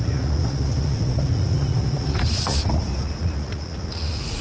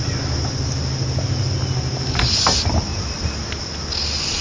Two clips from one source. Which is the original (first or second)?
second